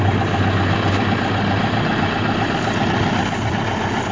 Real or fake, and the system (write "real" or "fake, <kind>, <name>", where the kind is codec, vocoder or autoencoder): real